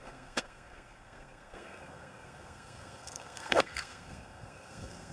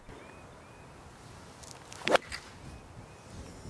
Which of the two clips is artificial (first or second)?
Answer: first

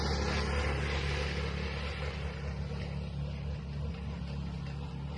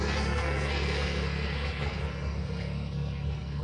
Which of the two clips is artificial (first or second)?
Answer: second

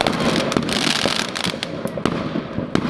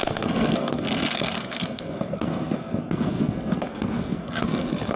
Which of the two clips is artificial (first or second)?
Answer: second